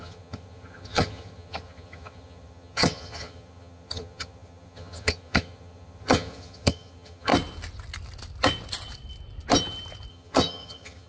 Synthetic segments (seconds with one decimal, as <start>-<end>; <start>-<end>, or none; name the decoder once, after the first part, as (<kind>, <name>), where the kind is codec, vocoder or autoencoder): 0.0-7.3 (vocoder, HiFi-GAN); 10.1-11.1